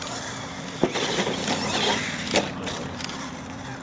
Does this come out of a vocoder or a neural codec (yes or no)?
yes